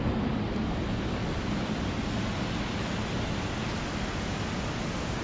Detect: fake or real real